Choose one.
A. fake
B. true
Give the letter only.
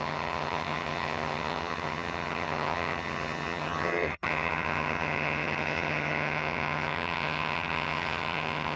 A